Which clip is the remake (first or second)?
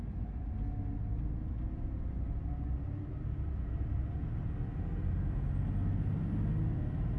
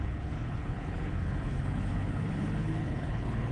second